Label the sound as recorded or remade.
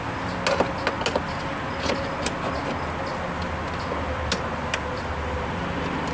recorded